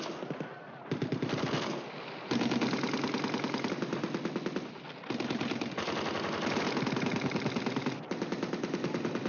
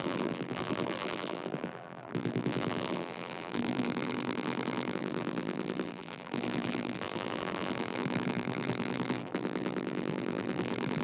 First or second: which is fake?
second